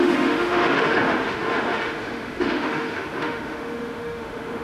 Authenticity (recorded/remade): remade